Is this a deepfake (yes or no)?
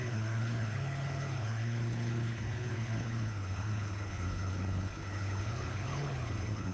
yes